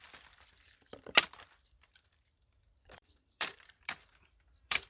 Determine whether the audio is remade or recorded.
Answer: remade